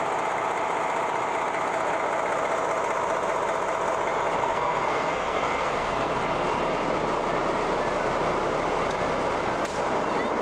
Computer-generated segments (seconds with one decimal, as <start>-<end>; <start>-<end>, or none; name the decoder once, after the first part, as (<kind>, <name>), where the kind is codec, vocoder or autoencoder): 4.4-6.1 (codec, SNAC)

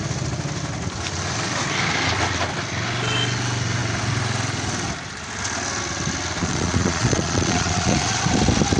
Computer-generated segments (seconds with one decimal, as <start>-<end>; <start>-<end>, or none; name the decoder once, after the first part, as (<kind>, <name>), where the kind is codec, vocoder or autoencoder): 6.4-8.2 (vocoder, Vocos)

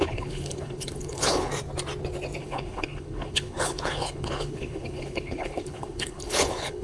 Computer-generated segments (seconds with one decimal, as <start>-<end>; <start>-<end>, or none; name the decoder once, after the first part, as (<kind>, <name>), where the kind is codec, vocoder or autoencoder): 0.0-1.5 (codec, HILCodec); 2.4-6.8

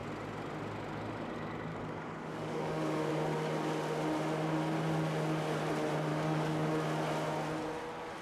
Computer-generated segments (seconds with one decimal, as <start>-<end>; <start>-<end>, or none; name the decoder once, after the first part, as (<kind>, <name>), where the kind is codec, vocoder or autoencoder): 1.7-3.1 (codec, DAC); 6.1-6.7

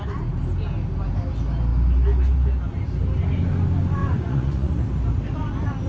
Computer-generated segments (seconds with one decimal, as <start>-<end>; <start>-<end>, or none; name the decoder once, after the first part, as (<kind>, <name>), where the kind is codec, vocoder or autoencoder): 4.0-4.7 (vocoder, Vocos)

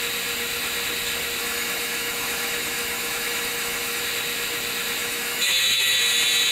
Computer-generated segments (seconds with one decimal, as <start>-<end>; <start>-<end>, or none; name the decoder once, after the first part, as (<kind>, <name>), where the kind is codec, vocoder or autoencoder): 1.4-4.0 (autoencoder, DAC-VAE); 5.0-6.0

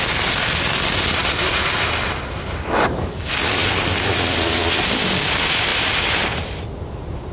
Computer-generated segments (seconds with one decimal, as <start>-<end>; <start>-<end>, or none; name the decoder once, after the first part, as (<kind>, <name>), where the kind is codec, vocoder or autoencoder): none